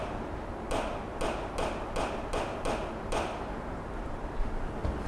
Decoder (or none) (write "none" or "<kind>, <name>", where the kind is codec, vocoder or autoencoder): none